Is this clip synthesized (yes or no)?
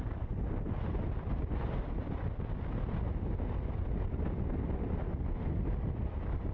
no